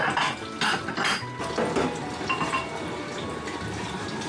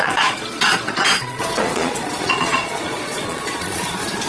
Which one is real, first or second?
first